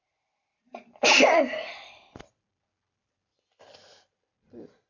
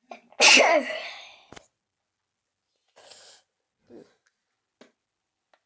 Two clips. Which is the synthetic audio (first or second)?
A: first